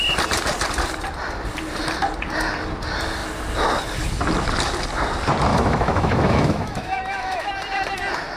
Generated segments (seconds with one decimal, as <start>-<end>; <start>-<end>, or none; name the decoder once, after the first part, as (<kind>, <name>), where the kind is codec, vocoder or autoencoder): 5.5-7.5 (autoencoder, DAC-VAE)